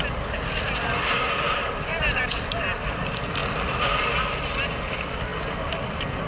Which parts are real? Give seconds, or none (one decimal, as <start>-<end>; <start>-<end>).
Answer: 0.0-6.3